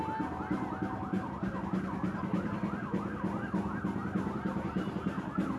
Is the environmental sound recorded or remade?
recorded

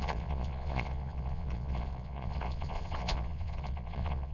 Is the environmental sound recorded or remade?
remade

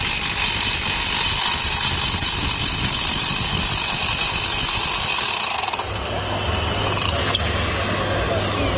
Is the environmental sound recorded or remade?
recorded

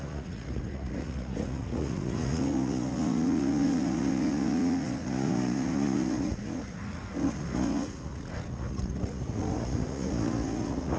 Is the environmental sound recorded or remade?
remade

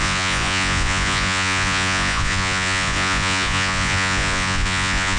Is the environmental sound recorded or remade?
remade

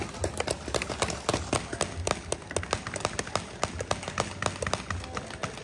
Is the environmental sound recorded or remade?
recorded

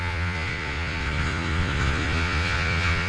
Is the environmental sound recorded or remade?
remade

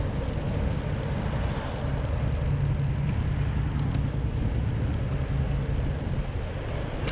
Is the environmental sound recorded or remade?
recorded